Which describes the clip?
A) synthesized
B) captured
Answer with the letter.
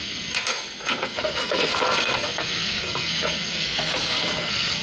A